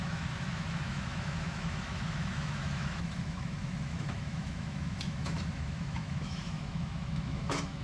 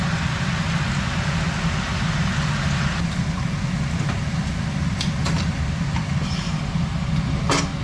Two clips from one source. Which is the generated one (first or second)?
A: first